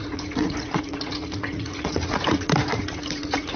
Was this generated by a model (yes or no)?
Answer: yes